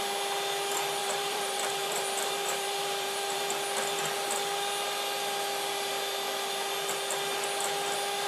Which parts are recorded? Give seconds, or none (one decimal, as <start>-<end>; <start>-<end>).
0.0-1.0; 3.4-8.3